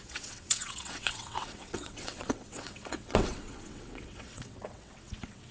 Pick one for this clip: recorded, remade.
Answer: remade